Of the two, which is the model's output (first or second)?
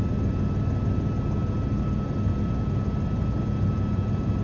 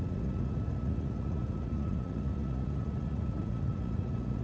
second